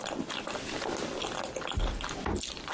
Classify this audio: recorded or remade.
recorded